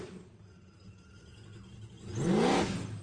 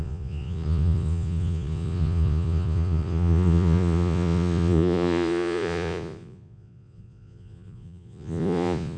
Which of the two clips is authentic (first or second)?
first